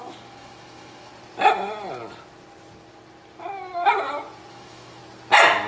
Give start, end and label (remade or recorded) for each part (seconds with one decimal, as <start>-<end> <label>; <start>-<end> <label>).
0.0-1.1 remade; 1.1-4.5 recorded; 4.5-5.0 remade; 5.0-5.7 recorded